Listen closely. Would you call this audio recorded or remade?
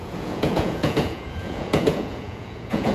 remade